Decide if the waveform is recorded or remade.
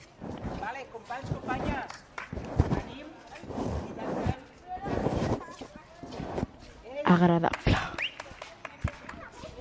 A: recorded